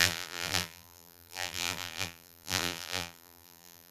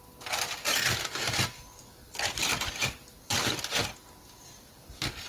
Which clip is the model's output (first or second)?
first